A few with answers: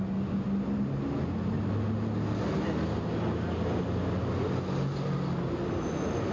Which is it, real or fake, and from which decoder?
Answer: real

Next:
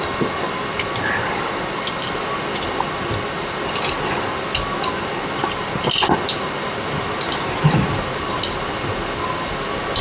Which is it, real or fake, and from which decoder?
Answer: real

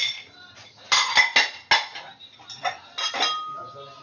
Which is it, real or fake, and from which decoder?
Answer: real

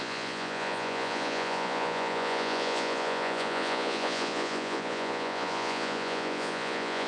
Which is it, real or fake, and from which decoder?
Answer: fake, vocoder, Vocos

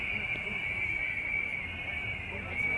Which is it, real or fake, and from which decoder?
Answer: real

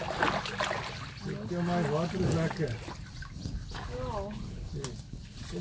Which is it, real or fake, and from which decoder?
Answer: real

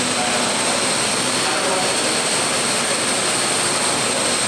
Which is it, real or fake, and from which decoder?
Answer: real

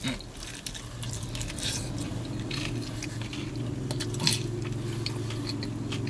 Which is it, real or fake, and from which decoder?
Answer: real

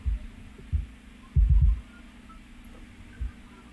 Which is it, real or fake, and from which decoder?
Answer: real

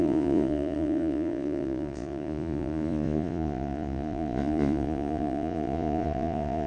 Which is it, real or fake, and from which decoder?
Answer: fake, vocoder, Vocos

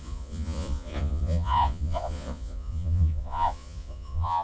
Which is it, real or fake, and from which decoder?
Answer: fake, vocoder, Vocos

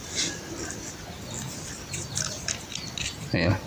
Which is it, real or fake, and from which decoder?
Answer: real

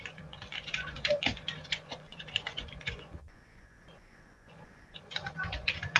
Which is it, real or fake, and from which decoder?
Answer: fake, vocoder, Vocos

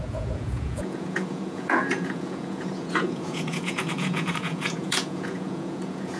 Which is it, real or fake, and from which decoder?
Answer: fake, vocoder, Vocos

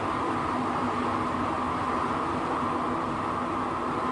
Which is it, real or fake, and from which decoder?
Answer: real